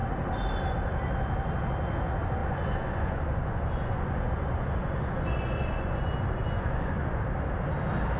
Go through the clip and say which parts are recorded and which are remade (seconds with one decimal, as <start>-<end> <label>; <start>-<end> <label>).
0.0-2.4 recorded; 2.4-7.2 remade; 7.2-8.2 recorded

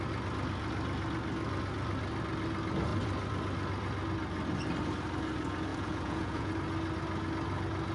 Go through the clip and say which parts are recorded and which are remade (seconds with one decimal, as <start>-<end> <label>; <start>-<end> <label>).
0.0-5.7 recorded; 5.7-6.5 remade; 6.5-7.9 recorded